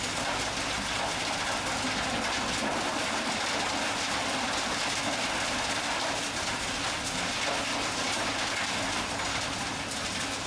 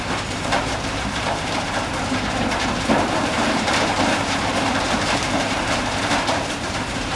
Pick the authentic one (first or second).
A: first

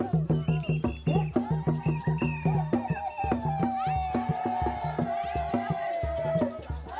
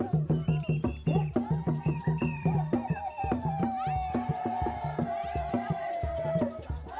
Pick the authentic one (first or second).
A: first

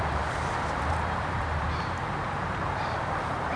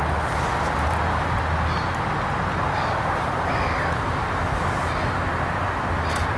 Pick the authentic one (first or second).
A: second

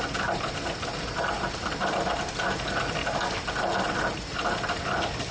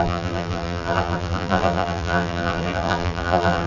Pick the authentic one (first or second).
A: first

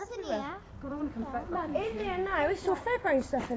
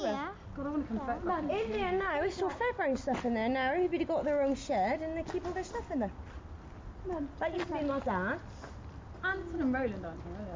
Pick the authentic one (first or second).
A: second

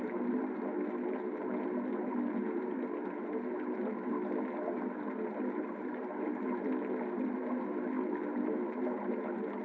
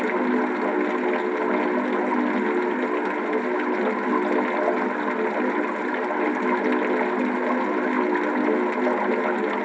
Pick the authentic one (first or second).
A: second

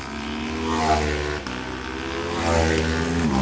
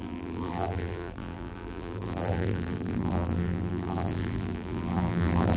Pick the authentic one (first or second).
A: first